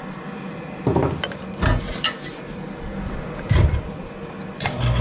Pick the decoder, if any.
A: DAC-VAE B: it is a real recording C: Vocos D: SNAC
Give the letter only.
B